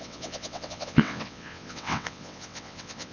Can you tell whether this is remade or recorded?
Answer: remade